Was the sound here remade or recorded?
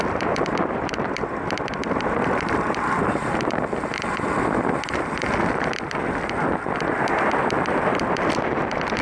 remade